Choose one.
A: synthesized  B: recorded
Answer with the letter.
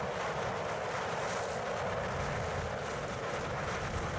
B